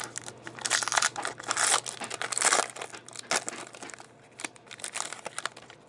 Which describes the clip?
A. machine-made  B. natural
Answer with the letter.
B